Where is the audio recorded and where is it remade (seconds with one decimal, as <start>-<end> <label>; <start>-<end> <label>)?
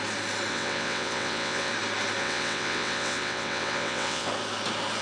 0.0-0.5 recorded; 0.5-1.7 remade; 1.7-2.2 recorded; 2.2-4.3 remade; 4.3-5.0 recorded